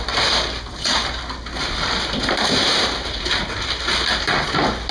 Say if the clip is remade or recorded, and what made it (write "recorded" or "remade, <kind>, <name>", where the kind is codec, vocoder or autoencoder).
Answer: recorded